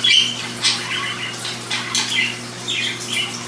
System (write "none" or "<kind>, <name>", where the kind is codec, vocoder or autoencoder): none